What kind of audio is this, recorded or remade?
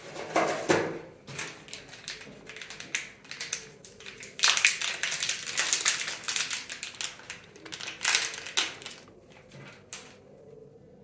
recorded